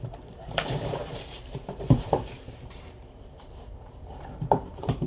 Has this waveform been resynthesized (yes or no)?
yes